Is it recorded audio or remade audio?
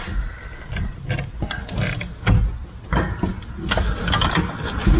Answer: recorded